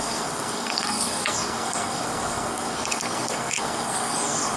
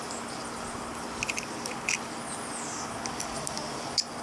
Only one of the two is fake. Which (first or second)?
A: first